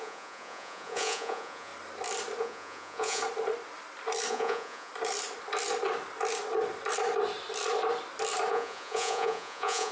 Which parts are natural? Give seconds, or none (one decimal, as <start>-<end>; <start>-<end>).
1.7-2.4; 3.2-4.3; 4.9-8.5